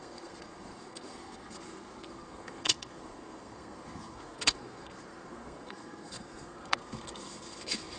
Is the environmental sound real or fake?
fake